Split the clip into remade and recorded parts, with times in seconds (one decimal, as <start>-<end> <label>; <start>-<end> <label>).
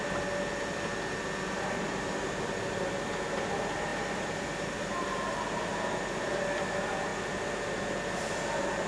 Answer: 0.0-8.9 recorded